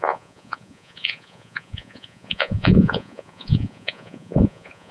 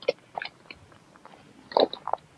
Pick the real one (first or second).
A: second